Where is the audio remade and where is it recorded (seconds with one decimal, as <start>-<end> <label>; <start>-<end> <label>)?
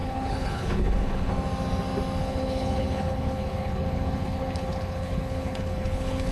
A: 0.0-1.3 remade; 1.3-2.2 recorded; 2.2-6.3 remade